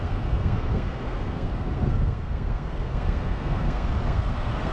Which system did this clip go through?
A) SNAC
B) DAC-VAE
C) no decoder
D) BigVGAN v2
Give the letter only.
A